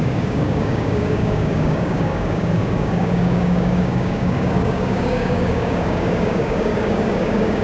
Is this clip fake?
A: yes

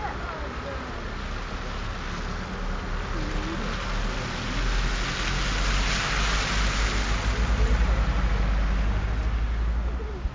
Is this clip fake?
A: no